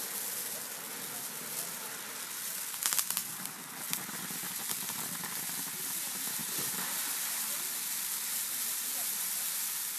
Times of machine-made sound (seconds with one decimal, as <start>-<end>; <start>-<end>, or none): 3.2-3.8; 6.4-7.5